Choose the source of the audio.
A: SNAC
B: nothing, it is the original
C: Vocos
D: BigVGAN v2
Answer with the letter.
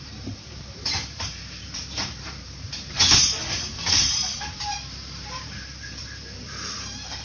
D